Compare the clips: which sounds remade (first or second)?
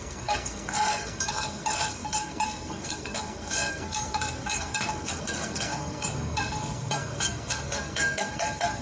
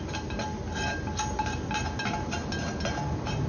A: first